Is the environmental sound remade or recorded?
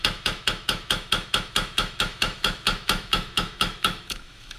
remade